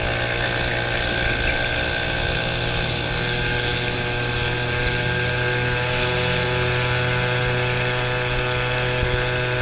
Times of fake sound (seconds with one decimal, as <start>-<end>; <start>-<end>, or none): none